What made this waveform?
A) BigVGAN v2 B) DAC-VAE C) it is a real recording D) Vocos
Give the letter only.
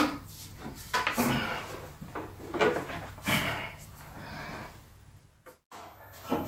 C